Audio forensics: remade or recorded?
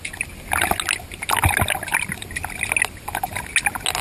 recorded